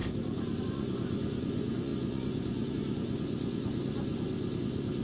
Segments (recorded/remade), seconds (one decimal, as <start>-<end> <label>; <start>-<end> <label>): 0.0-0.6 recorded; 0.6-4.1 remade; 4.1-4.6 recorded; 4.6-5.0 remade